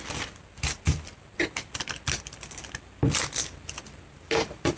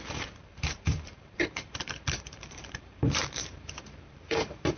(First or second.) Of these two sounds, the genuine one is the first